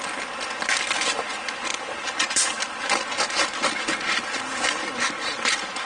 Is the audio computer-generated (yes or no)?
no